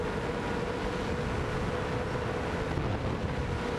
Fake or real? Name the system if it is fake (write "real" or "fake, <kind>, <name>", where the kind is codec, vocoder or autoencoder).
real